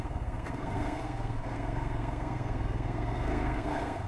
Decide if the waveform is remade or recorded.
remade